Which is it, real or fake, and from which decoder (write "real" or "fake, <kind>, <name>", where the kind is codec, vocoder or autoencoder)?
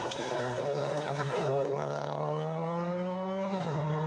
fake, codec, SNAC